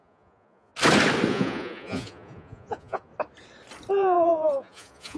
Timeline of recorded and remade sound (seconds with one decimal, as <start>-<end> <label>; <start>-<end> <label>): 0.0-0.7 remade; 0.7-1.3 recorded; 1.3-3.1 remade; 3.1-3.9 recorded; 3.9-5.2 remade